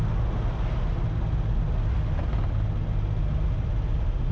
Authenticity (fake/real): real